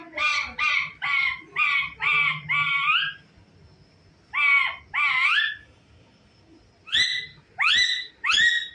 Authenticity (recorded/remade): recorded